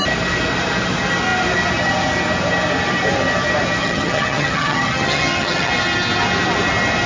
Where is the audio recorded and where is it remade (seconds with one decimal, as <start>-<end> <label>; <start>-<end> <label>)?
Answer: 0.0-3.8 recorded; 3.8-5.7 remade; 5.7-7.1 recorded